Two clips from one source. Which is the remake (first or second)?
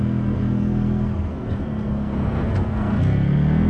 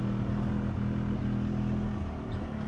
first